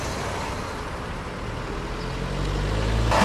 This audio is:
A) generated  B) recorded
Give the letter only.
B